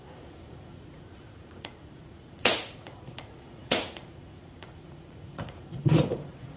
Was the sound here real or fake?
fake